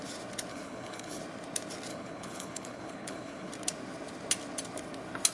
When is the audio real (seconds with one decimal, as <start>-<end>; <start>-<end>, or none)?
0.0-0.5; 1.2-1.9; 3.5-5.3